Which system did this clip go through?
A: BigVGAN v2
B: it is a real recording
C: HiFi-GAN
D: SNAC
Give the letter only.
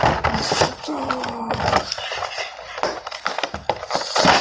B